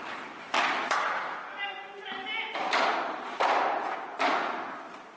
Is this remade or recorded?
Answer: recorded